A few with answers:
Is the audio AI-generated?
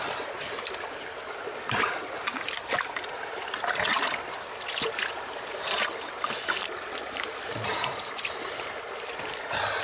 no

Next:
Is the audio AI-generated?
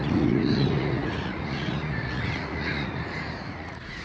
yes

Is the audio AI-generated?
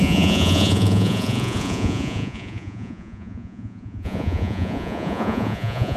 yes